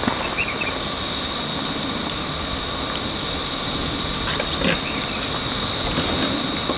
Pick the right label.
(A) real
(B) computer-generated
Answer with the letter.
A